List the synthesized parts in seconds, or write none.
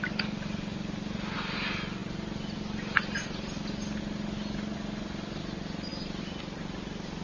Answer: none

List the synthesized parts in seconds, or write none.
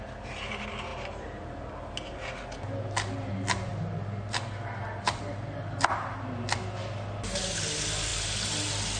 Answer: none